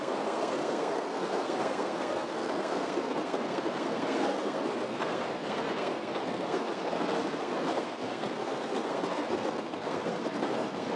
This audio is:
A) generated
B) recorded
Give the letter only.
A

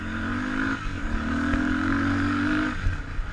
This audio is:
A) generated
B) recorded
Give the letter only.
A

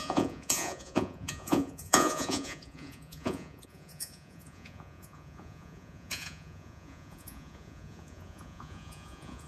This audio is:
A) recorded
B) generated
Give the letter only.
B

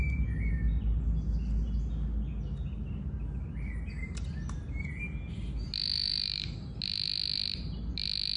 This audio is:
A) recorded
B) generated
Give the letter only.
A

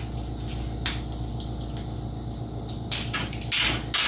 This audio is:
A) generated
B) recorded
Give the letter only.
B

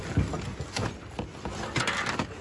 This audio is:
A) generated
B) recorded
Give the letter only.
B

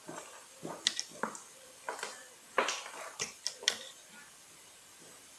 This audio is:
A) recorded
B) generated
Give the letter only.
A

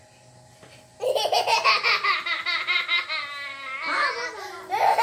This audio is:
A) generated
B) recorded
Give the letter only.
B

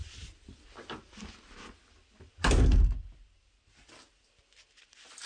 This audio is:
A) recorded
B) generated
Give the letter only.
A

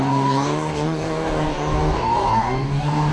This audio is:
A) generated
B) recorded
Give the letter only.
A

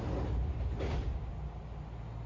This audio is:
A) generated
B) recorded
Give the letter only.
B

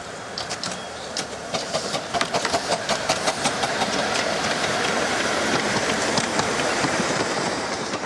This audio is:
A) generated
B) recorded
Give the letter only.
A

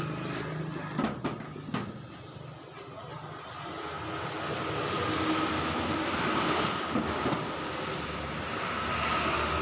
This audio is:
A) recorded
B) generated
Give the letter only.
A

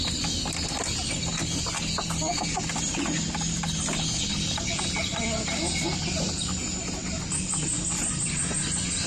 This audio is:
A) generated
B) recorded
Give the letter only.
B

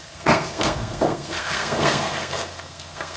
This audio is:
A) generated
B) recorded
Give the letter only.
A